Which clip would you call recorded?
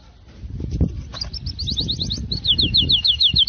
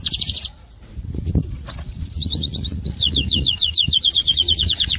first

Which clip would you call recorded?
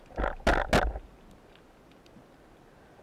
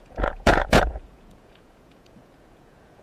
first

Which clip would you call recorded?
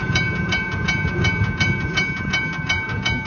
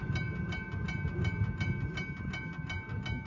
second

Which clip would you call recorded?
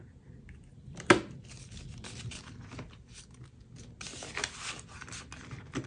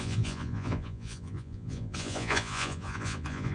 first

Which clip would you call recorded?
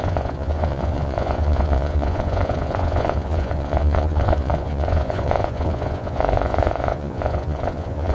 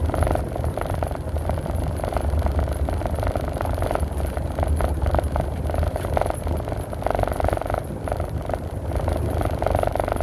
second